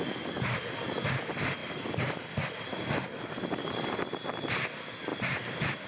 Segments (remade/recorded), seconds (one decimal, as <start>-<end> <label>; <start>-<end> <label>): 0.0-5.9 recorded